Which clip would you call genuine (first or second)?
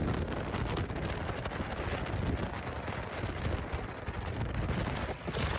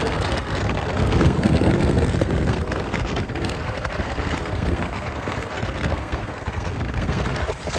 first